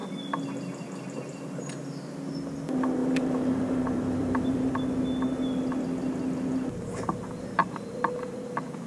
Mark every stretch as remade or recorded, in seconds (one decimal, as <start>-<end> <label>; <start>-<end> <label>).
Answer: 0.0-3.0 recorded; 3.0-4.7 remade; 4.7-7.6 recorded; 7.6-8.5 remade; 8.5-8.9 recorded